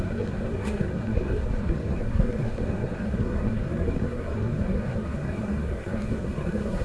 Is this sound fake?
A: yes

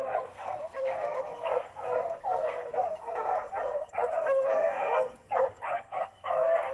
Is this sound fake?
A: yes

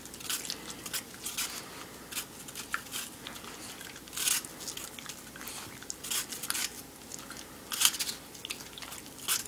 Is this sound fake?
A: no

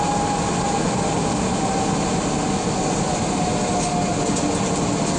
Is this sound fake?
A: no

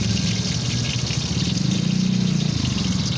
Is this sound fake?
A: no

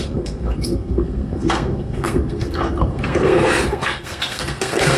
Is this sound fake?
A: yes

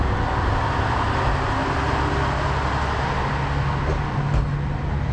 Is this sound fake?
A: no